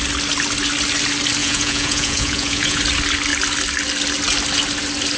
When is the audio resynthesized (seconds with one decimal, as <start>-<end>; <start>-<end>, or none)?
1.4-2.8